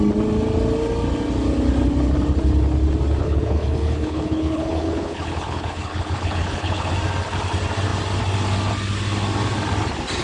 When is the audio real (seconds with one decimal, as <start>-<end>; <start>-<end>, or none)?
0.0-3.2; 6.9-10.2